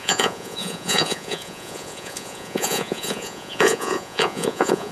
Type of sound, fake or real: fake